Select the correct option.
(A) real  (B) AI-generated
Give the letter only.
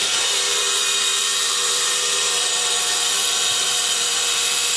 B